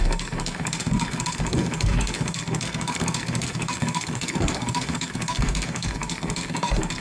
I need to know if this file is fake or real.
fake